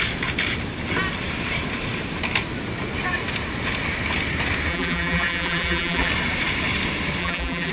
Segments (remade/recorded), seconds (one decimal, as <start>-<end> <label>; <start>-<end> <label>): 0.0-4.7 recorded; 4.7-6.1 remade; 6.1-7.2 recorded; 7.2-7.7 remade